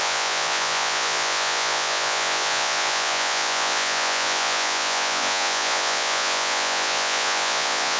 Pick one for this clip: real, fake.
fake